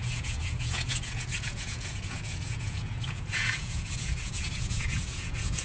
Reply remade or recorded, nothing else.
remade